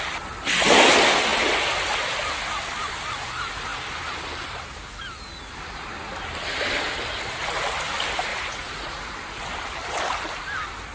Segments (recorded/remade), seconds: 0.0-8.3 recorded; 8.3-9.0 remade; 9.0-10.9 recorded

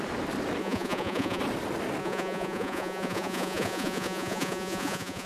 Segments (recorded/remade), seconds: 0.0-0.6 recorded; 0.6-1.4 remade; 1.4-2.0 recorded; 2.0-5.3 remade

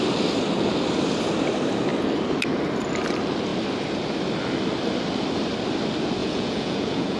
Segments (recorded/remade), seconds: 0.0-6.2 recorded; 6.2-7.2 remade

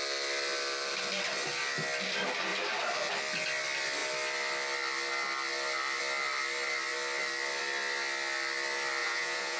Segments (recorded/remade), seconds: 0.0-9.0 recorded; 9.0-9.6 remade